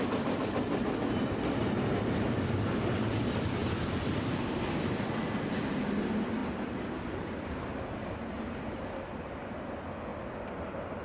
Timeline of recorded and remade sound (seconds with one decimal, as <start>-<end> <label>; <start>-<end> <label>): 0.0-11.0 recorded